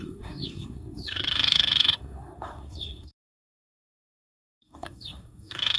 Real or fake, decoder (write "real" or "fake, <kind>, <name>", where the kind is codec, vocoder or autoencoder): fake, codec, SNAC